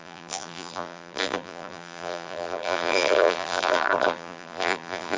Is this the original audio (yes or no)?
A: no